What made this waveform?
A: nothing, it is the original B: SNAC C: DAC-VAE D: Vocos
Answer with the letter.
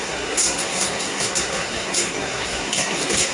B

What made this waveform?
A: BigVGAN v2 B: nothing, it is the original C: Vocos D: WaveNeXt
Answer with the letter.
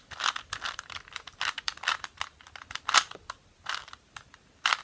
A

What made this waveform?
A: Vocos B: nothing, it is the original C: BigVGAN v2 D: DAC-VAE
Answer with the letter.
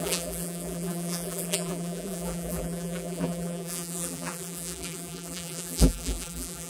C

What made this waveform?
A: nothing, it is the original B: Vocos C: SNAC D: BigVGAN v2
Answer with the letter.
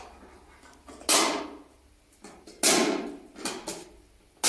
A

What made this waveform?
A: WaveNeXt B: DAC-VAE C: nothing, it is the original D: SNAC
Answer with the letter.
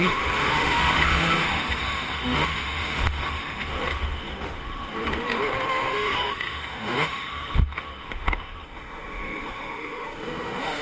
B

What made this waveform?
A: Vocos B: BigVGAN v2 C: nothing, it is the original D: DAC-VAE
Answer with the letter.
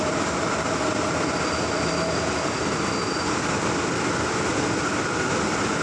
C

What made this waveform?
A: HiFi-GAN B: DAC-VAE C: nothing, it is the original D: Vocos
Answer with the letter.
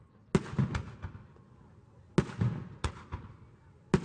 C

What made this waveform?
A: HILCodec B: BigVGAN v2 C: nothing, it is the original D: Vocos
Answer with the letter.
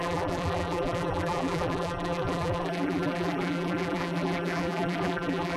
B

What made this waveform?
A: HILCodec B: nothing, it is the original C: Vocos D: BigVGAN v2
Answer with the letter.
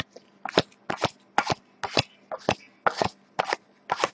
B